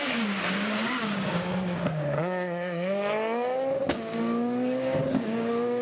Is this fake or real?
fake